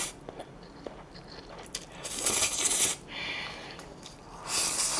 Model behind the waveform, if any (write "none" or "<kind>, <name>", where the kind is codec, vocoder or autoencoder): none